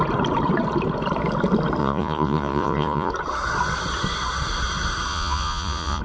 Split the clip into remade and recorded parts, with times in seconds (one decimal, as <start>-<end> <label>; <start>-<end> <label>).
0.0-1.8 recorded; 1.8-3.1 remade; 3.1-5.1 recorded; 5.1-6.0 remade